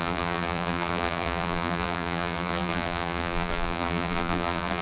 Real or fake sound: fake